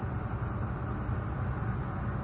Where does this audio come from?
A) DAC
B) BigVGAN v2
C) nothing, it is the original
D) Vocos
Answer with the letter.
C